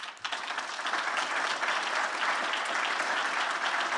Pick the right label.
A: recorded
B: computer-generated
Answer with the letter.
A